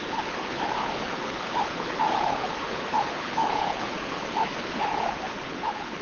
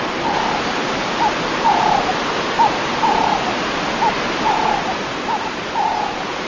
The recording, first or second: second